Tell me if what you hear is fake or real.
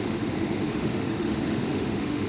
fake